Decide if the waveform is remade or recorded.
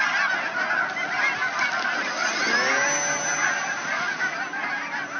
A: recorded